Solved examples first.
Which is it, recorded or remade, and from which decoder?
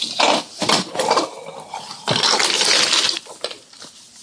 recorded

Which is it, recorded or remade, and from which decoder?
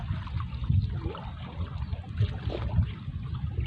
recorded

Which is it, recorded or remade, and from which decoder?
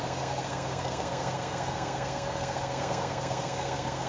remade, codec, SNAC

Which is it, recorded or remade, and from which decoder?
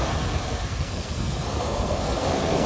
remade, codec, SNAC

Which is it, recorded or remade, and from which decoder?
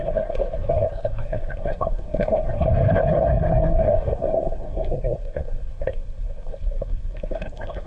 remade, codec, SNAC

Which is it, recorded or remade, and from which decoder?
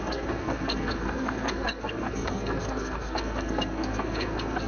remade, codec, SNAC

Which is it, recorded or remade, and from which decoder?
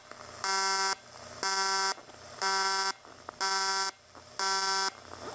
recorded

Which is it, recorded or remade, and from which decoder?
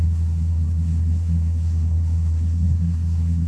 remade, codec, SNAC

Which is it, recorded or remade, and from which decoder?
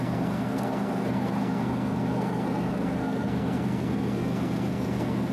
remade, codec, SNAC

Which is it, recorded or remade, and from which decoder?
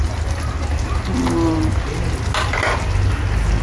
recorded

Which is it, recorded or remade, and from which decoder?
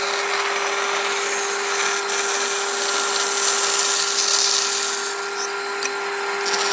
recorded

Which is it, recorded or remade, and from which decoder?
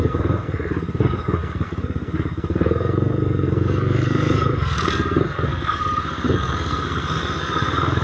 remade, codec, SNAC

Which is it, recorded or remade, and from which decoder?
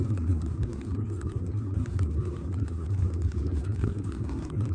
remade, codec, SNAC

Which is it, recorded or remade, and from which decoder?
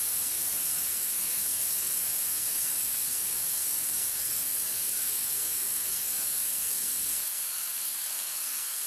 remade, codec, SNAC